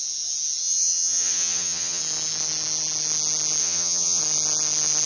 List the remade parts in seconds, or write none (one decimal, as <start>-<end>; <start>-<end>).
0.6-2.0; 3.6-4.2